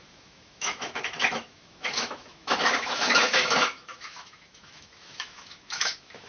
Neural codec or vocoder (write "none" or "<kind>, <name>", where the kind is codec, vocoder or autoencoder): autoencoder, DAC-VAE